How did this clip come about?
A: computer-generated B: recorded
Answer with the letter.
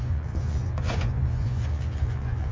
A